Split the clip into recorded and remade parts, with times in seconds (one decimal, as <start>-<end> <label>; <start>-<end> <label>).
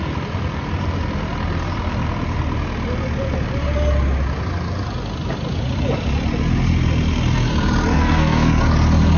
0.0-7.9 recorded; 7.9-8.6 remade; 8.6-9.2 recorded